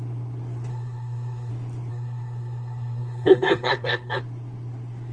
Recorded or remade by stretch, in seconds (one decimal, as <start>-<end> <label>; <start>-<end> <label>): 0.0-0.7 recorded; 0.7-1.5 remade; 1.5-1.9 recorded; 1.9-4.2 remade; 4.2-5.1 recorded